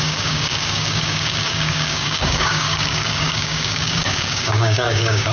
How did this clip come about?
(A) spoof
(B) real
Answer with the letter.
A